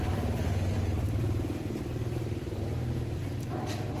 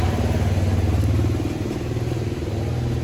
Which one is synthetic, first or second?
first